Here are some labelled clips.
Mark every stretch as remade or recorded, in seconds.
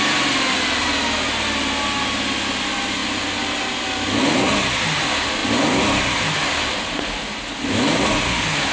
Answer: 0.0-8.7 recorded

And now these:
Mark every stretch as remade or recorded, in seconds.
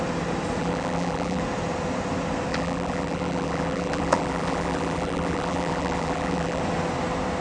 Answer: 0.0-0.6 recorded; 0.6-1.4 remade; 1.4-2.5 recorded; 2.5-6.6 remade; 6.6-7.4 recorded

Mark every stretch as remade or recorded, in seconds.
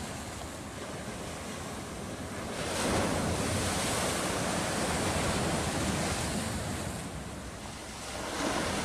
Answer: 0.0-8.8 recorded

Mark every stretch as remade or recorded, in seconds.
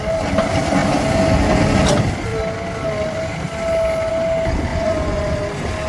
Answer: 0.0-4.7 recorded; 4.7-5.4 remade; 5.4-5.9 recorded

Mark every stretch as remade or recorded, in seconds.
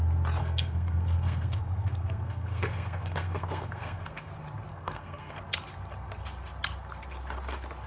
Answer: 0.0-0.4 recorded; 0.4-4.3 remade; 4.3-4.7 recorded; 4.7-5.4 remade; 5.4-7.9 recorded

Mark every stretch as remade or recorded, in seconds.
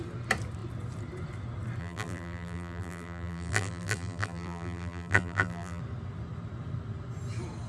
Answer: 0.0-1.8 recorded; 1.8-5.8 remade; 5.8-7.7 recorded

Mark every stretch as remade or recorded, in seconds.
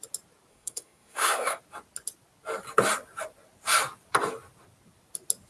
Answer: 0.0-0.5 recorded; 0.5-1.6 remade; 1.6-5.5 recorded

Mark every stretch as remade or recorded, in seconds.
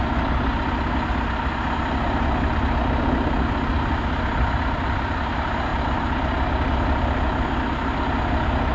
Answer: 0.0-8.7 recorded